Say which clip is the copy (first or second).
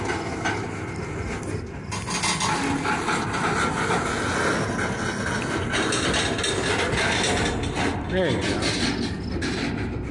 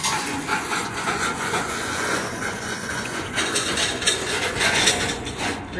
second